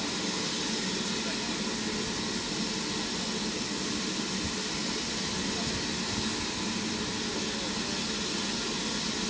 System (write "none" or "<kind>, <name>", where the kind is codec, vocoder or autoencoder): none